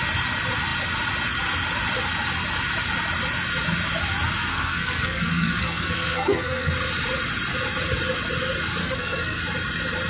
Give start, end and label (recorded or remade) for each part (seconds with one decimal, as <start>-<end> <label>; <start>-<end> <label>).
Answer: 0.0-4.5 recorded; 4.5-6.7 remade; 6.7-8.8 recorded; 8.8-9.4 remade; 9.4-10.1 recorded